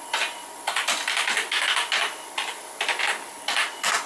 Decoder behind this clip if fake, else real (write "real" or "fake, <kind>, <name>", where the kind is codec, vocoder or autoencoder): real